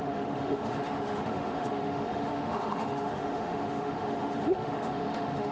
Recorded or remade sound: remade